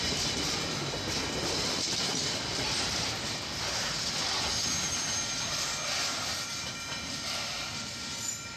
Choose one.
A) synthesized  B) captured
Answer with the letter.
B